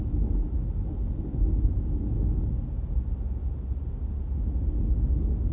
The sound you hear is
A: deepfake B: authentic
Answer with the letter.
B